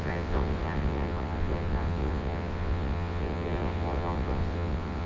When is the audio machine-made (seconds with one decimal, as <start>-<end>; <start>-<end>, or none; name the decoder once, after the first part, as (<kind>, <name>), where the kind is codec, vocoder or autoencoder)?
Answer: 0.0-5.1 (vocoder, WaveNeXt)